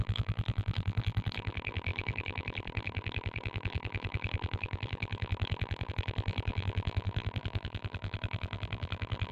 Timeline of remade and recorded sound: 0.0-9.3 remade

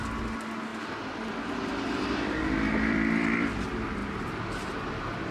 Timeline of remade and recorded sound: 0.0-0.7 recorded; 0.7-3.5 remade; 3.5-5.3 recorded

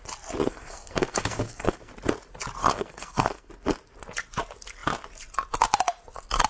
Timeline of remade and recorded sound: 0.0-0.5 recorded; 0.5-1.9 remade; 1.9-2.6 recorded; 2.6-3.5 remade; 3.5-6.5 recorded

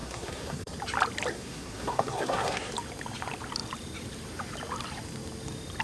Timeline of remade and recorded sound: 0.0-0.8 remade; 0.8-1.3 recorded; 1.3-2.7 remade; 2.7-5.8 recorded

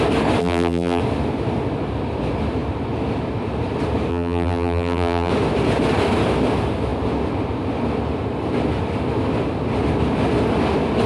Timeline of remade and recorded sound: 0.0-0.4 recorded; 0.4-1.0 remade; 1.0-4.1 recorded; 4.1-5.3 remade; 5.3-11.1 recorded

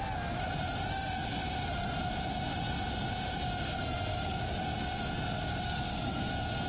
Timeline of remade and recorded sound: 0.0-4.1 recorded; 4.1-4.6 remade; 4.6-5.5 recorded; 5.5-6.3 remade; 6.3-6.7 recorded